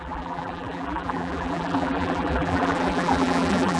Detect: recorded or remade remade